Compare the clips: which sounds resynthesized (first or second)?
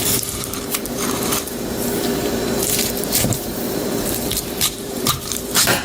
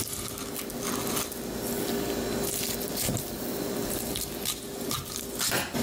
first